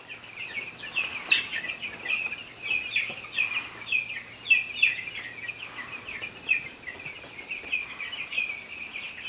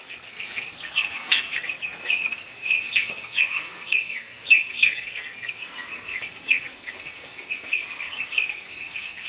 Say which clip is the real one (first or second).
first